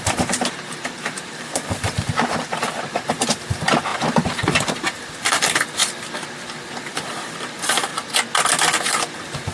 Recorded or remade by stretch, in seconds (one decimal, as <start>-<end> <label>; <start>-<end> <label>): 0.0-5.8 remade; 5.8-6.9 recorded; 6.9-7.9 remade; 7.9-8.8 recorded; 8.8-9.5 remade

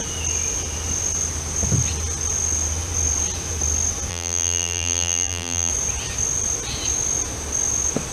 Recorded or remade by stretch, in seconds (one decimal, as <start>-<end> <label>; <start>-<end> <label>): 0.0-4.1 recorded; 4.1-5.7 remade; 5.7-8.1 recorded